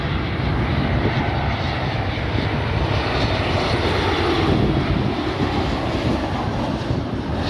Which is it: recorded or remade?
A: recorded